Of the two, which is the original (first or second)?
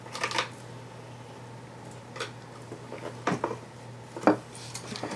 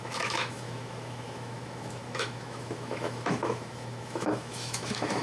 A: first